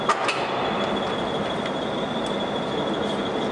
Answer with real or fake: real